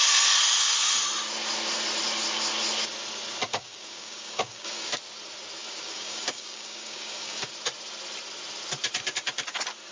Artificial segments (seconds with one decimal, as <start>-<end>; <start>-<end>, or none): 3.5-4.9; 5.6-7.5